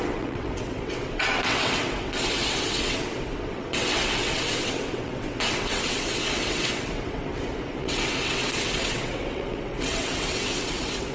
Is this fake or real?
fake